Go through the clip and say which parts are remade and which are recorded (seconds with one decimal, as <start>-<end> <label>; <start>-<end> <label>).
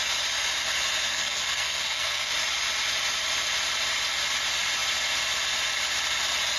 0.0-1.1 recorded; 1.1-2.3 remade; 2.3-6.6 recorded